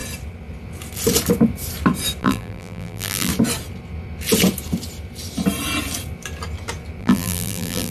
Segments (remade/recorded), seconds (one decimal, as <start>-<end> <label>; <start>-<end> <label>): 0.0-2.2 recorded; 2.2-3.3 remade; 3.3-7.0 recorded; 7.0-7.9 remade